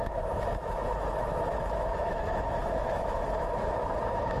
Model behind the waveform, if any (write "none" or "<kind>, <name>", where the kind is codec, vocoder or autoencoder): autoencoder, DAC-VAE